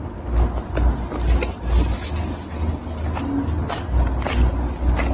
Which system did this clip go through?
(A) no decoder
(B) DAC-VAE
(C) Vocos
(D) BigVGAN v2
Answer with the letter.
A